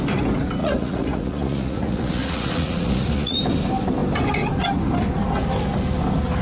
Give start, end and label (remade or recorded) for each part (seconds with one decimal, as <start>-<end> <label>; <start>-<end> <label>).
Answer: 0.0-0.6 recorded; 0.6-3.4 remade; 3.4-6.4 recorded